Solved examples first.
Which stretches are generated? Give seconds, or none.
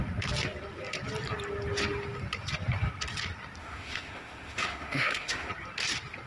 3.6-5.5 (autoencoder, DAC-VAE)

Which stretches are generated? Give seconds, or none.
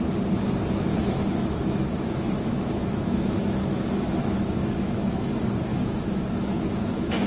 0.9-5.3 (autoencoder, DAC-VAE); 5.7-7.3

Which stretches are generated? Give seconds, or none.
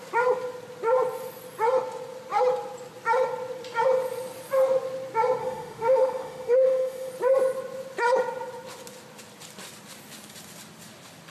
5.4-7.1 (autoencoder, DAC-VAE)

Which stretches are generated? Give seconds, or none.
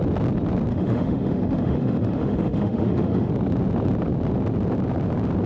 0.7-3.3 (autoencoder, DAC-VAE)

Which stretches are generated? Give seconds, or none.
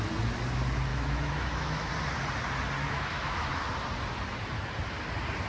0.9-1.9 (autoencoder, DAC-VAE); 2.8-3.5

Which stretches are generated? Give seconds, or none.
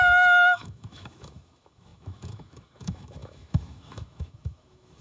0.0-5.0 (autoencoder, DAC-VAE)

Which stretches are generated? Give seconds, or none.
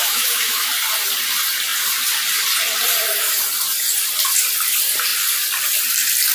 0.0-0.7 (autoencoder, DAC-VAE)